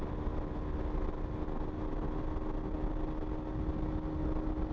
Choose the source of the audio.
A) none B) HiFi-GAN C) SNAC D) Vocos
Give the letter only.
A